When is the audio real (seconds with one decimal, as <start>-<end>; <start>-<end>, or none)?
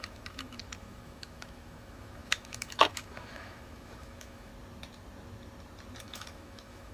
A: 4.5-6.0